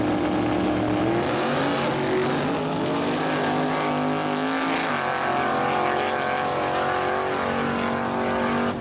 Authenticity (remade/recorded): recorded